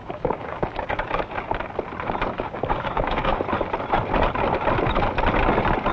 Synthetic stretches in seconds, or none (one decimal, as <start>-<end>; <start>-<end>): 0.0-1.2; 2.3-3.4